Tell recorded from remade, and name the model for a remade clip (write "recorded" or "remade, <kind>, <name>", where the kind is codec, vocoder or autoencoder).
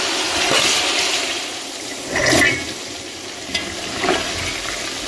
recorded